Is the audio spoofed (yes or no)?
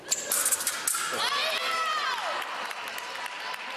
no